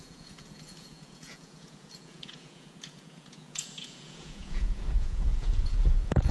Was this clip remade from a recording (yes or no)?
yes